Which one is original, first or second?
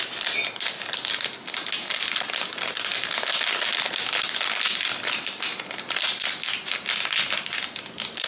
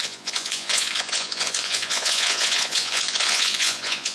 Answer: first